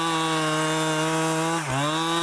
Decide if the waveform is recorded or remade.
recorded